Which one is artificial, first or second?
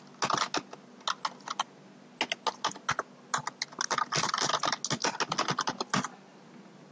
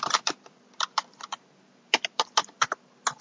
second